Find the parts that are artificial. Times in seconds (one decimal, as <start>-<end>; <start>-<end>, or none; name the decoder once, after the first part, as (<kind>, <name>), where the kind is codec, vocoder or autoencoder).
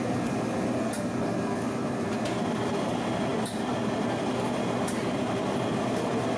none